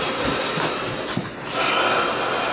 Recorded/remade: recorded